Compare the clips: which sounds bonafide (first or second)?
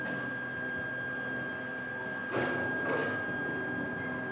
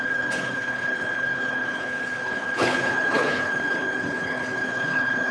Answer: first